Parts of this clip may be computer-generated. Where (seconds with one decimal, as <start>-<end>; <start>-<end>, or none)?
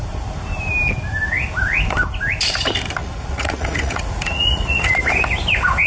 3.0-5.0